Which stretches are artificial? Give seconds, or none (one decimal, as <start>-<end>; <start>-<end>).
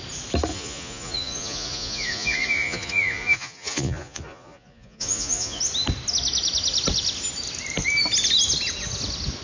0.5-5.6